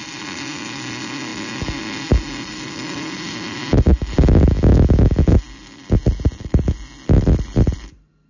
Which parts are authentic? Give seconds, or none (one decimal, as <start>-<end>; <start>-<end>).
0.0-8.3